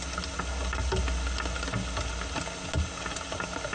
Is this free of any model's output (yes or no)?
yes